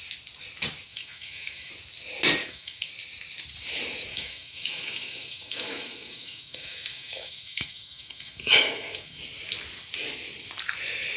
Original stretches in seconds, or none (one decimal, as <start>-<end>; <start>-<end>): 0.0-0.9; 1.7-2.4; 2.9-4.1; 9.2-11.2